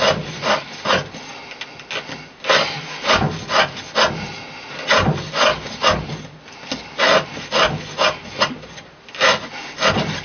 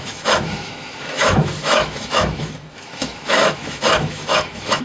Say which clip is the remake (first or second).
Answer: second